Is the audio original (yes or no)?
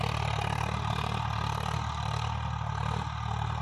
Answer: yes